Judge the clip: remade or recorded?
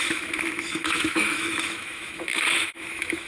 remade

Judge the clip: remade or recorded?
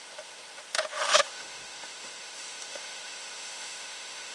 remade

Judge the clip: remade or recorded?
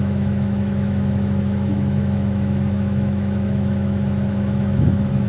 remade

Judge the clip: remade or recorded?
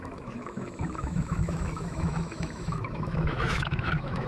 remade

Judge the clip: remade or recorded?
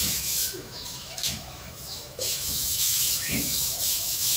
remade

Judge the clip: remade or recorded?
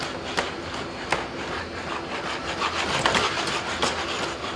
recorded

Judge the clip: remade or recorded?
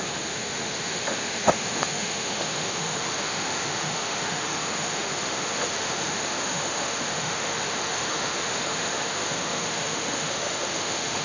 remade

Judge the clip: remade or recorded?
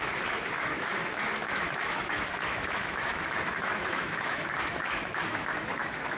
remade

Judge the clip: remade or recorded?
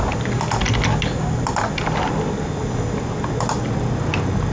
recorded